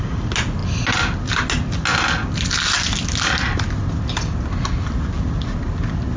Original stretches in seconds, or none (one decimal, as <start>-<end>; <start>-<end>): 0.0-6.2